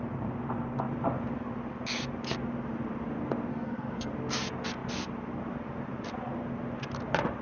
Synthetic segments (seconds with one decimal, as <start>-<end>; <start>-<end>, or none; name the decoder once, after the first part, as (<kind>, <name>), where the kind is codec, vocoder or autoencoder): 3.5-4.1 (codec, SNAC)